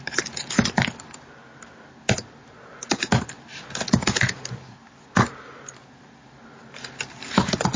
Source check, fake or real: real